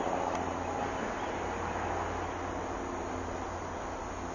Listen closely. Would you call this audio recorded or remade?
recorded